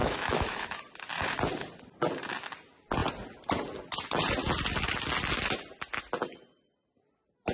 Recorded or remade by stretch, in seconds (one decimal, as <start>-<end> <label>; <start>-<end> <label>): 0.0-0.8 remade; 0.8-7.5 recorded